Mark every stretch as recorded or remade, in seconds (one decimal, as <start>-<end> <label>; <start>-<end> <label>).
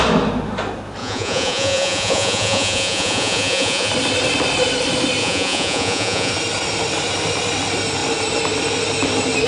0.0-1.0 recorded; 1.0-3.9 remade; 3.9-5.2 recorded; 5.2-6.3 remade; 6.3-9.5 recorded